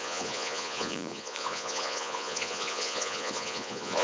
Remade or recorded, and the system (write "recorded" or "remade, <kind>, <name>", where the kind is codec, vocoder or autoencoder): remade, vocoder, Vocos